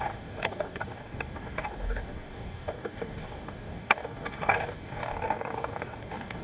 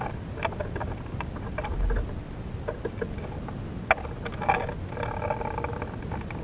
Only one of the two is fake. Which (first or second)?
first